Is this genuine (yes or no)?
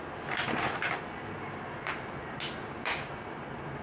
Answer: yes